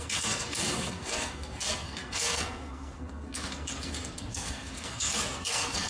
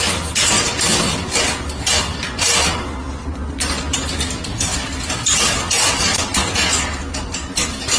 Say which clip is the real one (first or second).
second